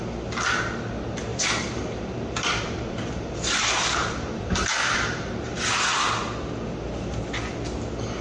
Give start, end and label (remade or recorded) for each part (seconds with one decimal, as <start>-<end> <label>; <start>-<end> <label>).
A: 0.0-1.3 recorded; 1.3-5.7 remade; 5.7-8.2 recorded